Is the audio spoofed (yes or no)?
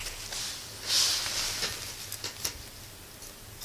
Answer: no